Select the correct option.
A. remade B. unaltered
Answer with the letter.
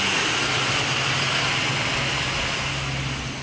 B